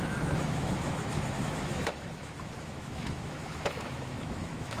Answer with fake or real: fake